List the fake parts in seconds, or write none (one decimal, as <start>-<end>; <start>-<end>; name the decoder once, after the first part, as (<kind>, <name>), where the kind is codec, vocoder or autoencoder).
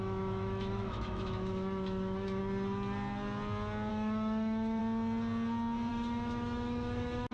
0.0-2.4 (autoencoder, DAC-VAE); 3.9-4.8; 5.9-7.3